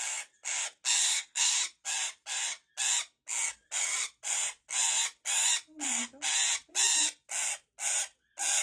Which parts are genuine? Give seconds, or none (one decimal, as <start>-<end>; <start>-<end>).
0.0-1.0; 1.6-8.6